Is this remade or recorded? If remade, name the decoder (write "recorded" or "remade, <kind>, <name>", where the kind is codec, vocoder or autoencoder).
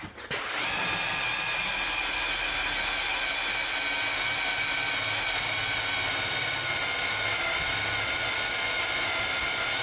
recorded